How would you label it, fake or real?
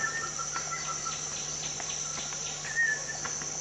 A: real